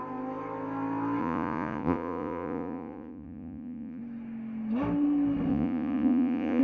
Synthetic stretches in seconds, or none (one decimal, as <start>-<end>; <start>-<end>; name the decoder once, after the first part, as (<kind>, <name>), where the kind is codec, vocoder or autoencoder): 1.2-4.0 (vocoder, Vocos); 5.5-6.6